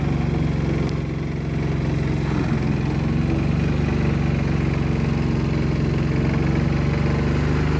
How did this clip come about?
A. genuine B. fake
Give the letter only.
A